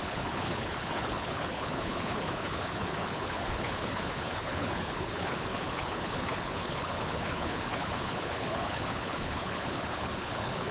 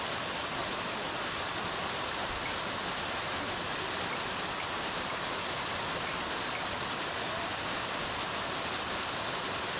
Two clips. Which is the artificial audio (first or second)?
first